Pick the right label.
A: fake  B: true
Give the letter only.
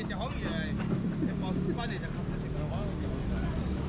B